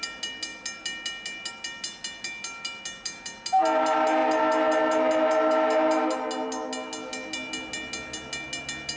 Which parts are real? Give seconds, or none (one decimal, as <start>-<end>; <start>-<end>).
0.0-9.0